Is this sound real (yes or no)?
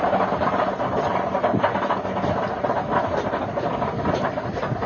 yes